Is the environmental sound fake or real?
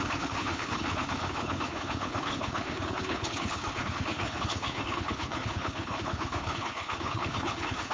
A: fake